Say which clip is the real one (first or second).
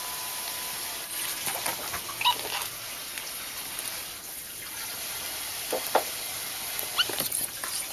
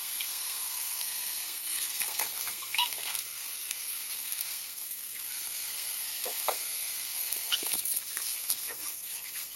first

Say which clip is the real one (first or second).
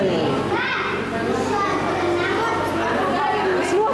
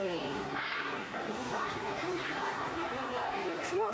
first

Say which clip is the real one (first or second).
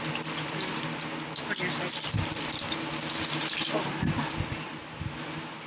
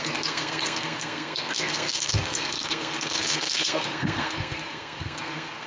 first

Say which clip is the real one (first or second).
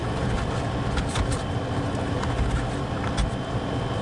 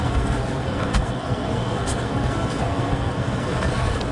first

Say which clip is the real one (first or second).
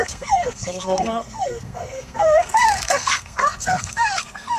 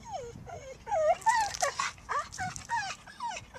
second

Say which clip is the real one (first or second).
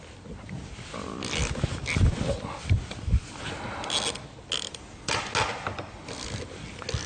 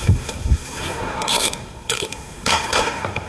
first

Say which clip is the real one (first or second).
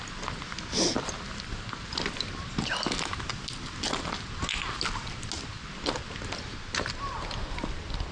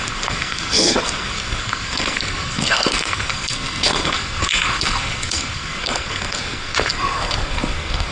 first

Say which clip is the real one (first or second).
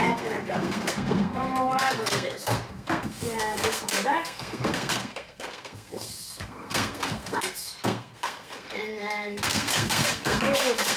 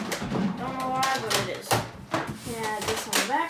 second